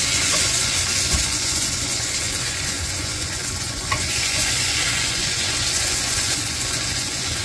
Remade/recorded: remade